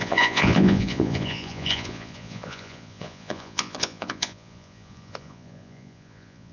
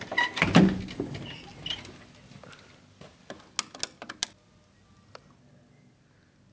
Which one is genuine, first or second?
second